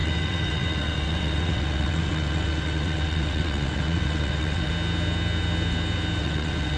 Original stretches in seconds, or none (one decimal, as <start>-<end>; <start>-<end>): 4.7-6.2